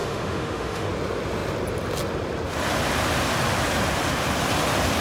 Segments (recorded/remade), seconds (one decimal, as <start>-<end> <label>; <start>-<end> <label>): 0.0-0.9 remade; 0.9-5.0 recorded